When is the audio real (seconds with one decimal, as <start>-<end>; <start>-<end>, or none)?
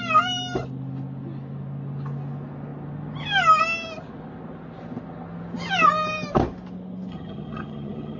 0.0-7.1